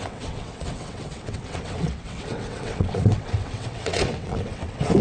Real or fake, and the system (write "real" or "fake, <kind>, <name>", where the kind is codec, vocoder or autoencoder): fake, vocoder, WaveNeXt